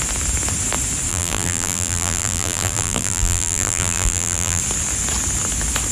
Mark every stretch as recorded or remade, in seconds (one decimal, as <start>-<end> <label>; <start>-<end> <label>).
0.0-1.1 recorded; 1.1-4.6 remade; 4.6-5.9 recorded